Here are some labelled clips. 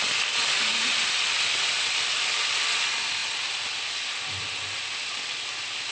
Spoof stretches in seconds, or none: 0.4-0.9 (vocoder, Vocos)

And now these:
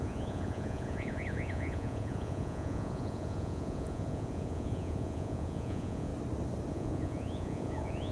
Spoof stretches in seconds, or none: 0.0-6.1 (vocoder, Vocos); 6.7-8.1

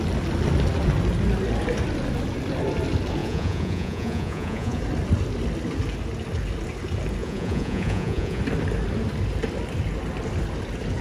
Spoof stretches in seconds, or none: 3.2-4.8 (vocoder, Vocos); 7.2-8.4

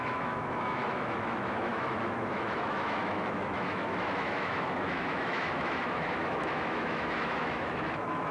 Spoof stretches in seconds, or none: 0.0-8.3 (autoencoder, DAC-VAE)

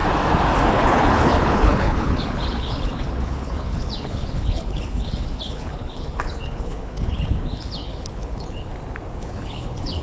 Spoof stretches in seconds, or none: 0.7-8.7 (codec, HILCodec); 9.2-10.0

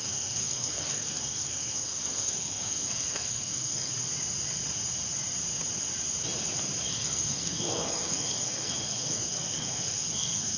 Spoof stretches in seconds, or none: 0.0-3.9 (codec, SNAC); 6.9-10.6

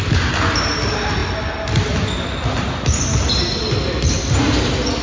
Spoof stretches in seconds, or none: none

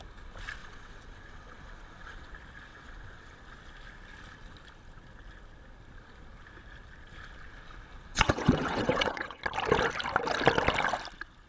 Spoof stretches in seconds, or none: 0.6-2.3 (vocoder, WaveNeXt); 2.7-3.4; 8.1-9.4